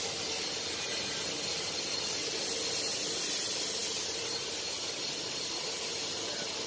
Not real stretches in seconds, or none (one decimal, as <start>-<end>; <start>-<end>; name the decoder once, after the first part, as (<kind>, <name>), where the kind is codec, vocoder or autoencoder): none